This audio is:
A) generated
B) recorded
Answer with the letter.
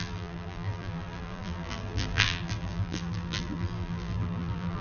A